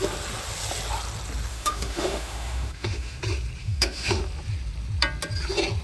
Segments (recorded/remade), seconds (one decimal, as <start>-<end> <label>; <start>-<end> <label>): 0.0-1.5 recorded; 1.5-3.2 remade; 3.2-3.6 recorded; 3.6-4.2 remade; 4.2-5.8 recorded